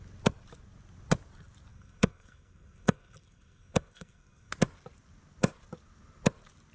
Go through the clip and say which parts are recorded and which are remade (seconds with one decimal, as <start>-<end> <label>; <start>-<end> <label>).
0.0-1.7 recorded; 1.7-4.5 remade; 4.5-6.7 recorded